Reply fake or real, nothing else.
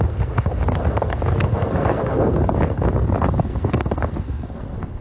fake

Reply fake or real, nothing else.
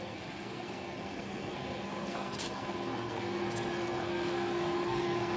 fake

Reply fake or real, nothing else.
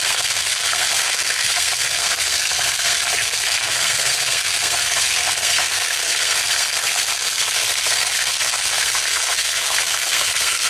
fake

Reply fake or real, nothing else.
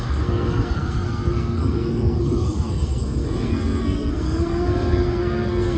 fake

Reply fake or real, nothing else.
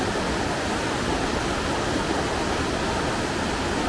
real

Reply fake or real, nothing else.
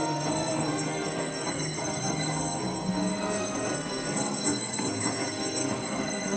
fake